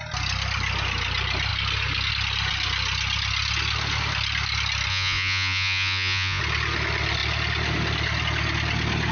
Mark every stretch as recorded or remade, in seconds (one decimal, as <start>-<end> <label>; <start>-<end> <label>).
0.0-4.9 recorded; 4.9-6.4 remade; 6.4-9.1 recorded